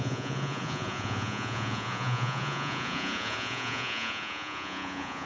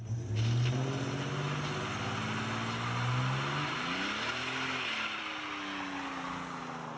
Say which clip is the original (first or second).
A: second